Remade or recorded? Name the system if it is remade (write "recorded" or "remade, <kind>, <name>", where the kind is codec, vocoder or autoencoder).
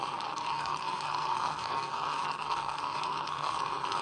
remade, codec, SNAC